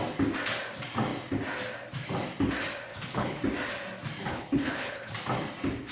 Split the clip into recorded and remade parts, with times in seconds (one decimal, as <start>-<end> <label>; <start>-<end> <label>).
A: 0.0-2.9 recorded; 2.9-3.4 remade; 3.4-4.2 recorded; 4.2-5.1 remade; 5.1-5.9 recorded